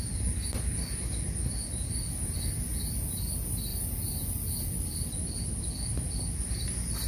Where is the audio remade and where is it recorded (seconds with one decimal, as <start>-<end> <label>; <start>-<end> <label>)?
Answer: 0.0-2.7 recorded; 2.7-3.3 remade; 3.3-3.7 recorded; 3.7-6.1 remade; 6.1-7.1 recorded